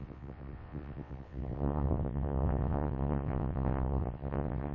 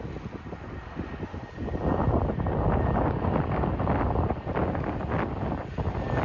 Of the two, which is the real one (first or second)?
second